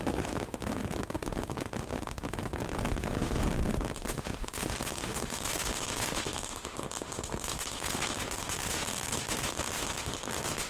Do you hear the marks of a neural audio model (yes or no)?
yes